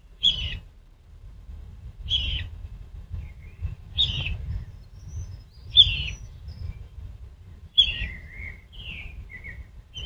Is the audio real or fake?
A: fake